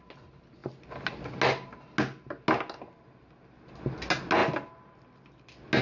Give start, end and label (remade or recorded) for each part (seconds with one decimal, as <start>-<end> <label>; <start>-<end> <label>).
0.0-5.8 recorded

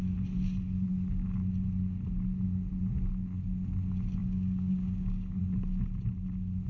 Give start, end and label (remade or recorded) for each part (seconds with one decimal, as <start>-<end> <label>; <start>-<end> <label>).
0.0-4.2 recorded; 4.2-5.4 remade; 5.4-6.7 recorded

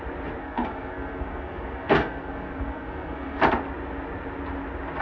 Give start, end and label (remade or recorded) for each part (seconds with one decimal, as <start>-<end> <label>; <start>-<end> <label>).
0.0-0.4 recorded; 0.4-3.4 remade; 3.4-5.0 recorded